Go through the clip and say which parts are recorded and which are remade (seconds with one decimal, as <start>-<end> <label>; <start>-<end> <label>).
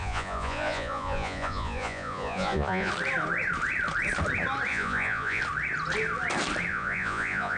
0.0-2.9 remade; 2.9-4.7 recorded; 4.7-5.4 remade; 5.4-6.7 recorded; 6.7-7.6 remade